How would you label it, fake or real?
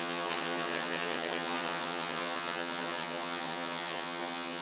fake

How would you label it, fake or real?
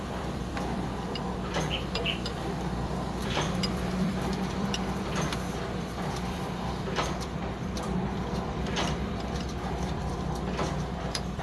fake